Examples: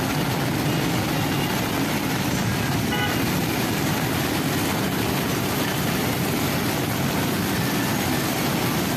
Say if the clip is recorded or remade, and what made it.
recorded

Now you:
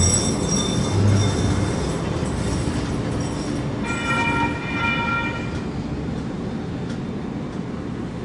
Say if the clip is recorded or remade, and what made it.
recorded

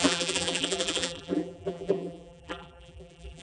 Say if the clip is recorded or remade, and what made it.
remade, vocoder, BigVGAN v2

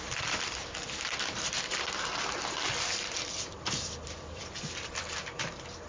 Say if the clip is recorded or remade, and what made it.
remade, vocoder, BigVGAN v2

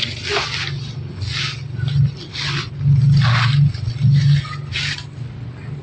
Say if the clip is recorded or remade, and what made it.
recorded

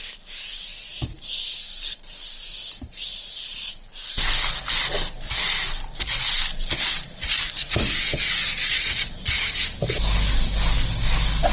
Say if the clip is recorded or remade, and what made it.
recorded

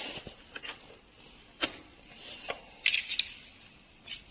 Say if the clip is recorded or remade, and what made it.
recorded